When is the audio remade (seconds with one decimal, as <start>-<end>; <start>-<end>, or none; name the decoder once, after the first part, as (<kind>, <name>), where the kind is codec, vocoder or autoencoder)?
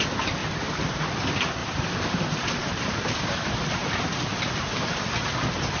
0.4-1.0 (vocoder, BigVGAN v2); 1.6-5.1